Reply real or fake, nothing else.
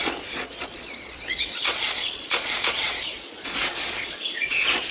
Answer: fake